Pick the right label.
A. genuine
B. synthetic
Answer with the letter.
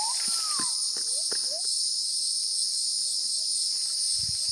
A